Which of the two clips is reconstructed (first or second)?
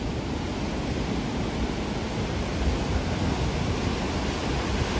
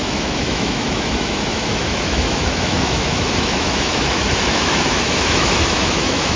second